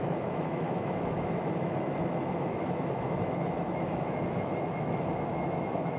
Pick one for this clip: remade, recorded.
remade